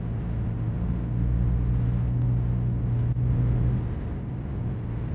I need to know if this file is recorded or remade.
recorded